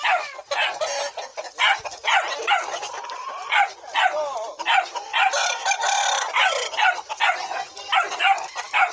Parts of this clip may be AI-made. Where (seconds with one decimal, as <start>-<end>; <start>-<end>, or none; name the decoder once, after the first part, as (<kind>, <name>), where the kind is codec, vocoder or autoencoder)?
none